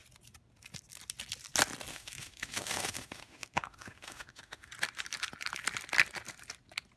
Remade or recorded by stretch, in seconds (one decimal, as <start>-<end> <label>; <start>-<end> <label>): 0.0-1.9 recorded; 1.9-4.7 remade; 4.7-7.0 recorded